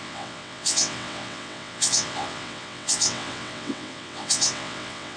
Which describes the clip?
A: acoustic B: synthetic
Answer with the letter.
B